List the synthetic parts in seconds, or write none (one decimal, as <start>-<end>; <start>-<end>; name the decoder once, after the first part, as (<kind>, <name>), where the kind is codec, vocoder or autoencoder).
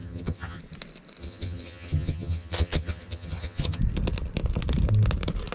0.0-0.6 (vocoder, HiFi-GAN); 1.2-3.8